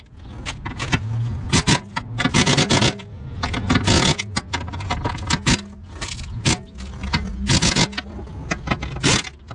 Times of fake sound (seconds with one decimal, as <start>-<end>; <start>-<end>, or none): none